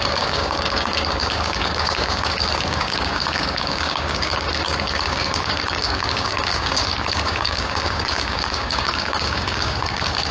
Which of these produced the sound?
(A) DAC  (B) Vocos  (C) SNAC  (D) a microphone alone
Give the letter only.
A